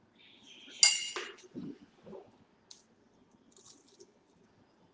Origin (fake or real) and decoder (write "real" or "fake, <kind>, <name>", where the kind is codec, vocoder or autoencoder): real